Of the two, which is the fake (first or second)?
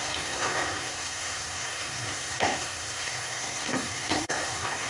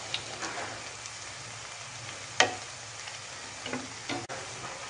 first